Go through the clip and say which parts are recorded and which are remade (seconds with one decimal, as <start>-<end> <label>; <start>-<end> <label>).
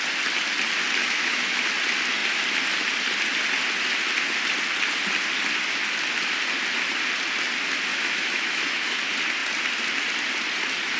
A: 0.0-1.0 recorded; 1.0-1.6 remade; 1.6-7.9 recorded; 7.9-9.0 remade; 9.0-11.0 recorded